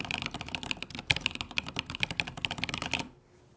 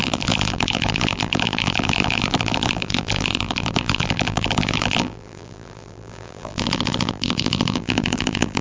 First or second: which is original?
first